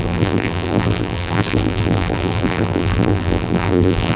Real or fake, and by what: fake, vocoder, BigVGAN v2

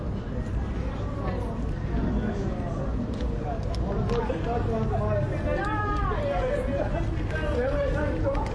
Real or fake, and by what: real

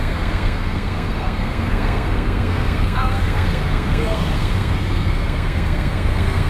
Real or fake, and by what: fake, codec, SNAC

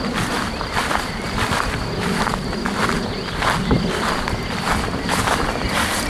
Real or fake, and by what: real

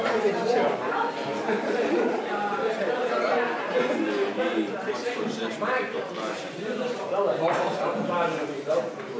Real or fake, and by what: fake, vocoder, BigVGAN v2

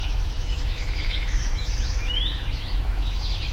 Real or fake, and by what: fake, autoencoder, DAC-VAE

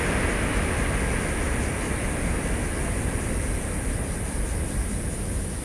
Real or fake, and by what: real